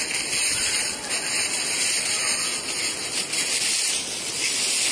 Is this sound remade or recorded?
recorded